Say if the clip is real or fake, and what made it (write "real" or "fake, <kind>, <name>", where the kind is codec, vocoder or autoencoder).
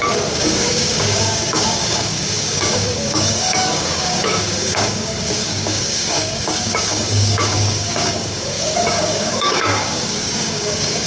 fake, codec, DAC